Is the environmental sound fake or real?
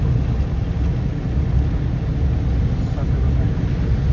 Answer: real